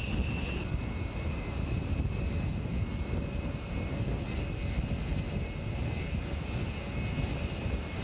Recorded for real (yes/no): yes